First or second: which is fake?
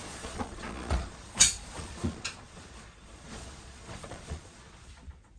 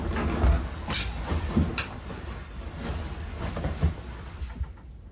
first